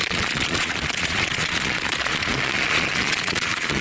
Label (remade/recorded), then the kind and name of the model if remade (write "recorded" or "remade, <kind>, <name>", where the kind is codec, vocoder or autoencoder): remade, vocoder, Vocos